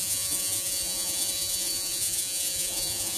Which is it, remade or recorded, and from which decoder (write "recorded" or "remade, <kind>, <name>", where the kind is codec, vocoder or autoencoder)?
remade, vocoder, Vocos